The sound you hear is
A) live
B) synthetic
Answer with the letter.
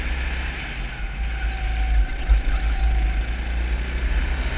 A